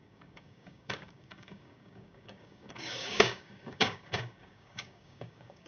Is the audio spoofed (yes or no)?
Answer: yes